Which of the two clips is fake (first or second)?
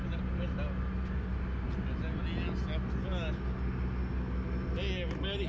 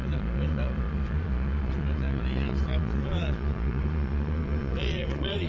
second